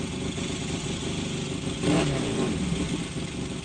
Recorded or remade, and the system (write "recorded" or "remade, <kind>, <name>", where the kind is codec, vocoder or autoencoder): recorded